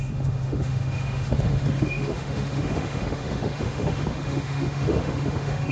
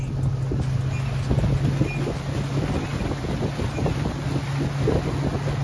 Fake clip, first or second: first